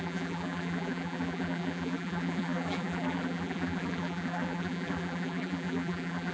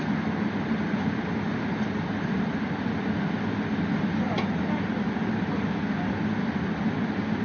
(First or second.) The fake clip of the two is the first